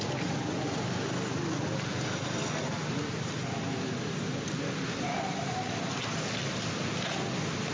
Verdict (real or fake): real